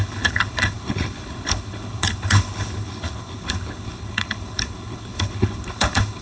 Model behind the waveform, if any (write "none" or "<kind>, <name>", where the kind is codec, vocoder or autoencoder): codec, HILCodec